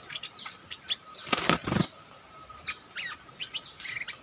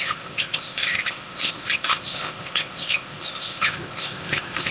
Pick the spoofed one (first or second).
second